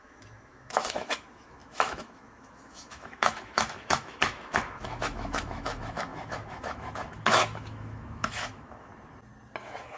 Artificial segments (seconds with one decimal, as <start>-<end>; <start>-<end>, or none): 0.0-8.9; 9.6-10.0